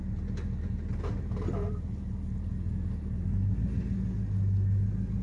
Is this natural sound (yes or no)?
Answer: yes